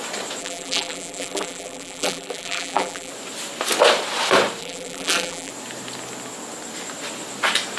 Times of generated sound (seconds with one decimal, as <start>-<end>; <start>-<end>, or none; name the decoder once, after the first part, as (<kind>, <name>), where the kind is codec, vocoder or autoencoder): 0.4-3.1 (vocoder, BigVGAN v2); 4.6-5.5